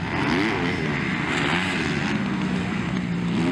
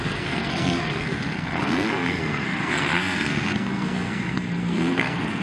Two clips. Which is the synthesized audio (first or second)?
second